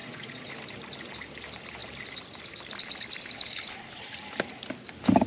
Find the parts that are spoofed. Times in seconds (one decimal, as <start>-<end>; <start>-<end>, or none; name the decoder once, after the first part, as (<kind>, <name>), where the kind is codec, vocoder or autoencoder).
0.0-0.5 (vocoder, Vocos)